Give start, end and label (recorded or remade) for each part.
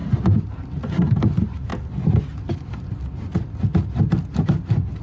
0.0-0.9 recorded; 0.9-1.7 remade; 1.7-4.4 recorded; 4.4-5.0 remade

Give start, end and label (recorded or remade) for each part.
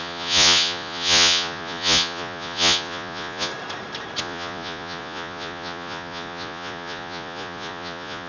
0.0-3.5 remade; 3.5-4.2 recorded; 4.2-8.3 remade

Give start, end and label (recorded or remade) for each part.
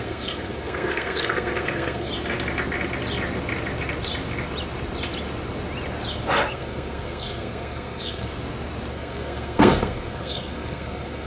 0.0-2.1 remade; 2.1-6.5 recorded; 6.5-8.3 remade; 8.3-8.9 recorded; 8.9-11.3 remade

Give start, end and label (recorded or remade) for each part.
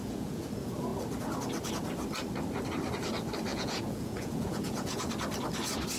0.0-0.5 remade; 0.5-3.5 recorded; 3.5-5.1 remade; 5.1-6.0 recorded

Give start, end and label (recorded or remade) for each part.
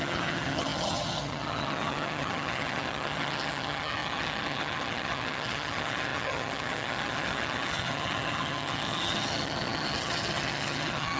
0.0-11.2 remade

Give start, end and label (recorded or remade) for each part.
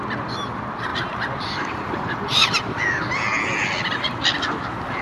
0.0-0.9 recorded; 0.9-2.6 remade; 2.6-5.0 recorded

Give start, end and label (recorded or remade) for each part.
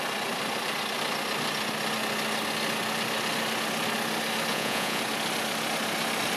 0.0-4.5 recorded; 4.5-5.0 remade; 5.0-6.4 recorded